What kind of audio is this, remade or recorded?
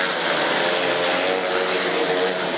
recorded